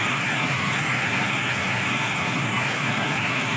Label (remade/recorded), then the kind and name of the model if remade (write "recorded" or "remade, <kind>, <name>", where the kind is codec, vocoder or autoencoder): remade, codec, SNAC